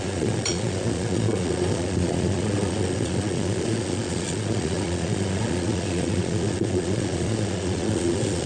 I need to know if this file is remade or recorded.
remade